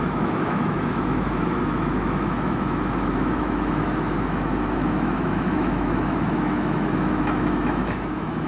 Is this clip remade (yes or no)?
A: yes